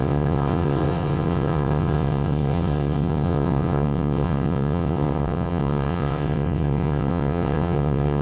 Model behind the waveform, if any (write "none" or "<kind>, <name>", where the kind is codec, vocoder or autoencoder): vocoder, WaveNeXt